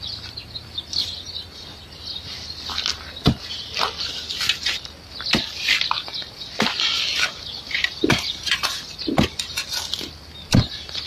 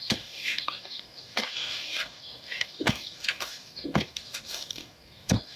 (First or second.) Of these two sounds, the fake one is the second